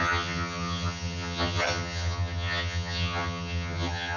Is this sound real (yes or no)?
no